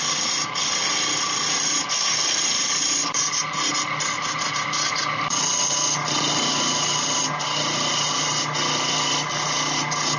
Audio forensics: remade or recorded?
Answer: recorded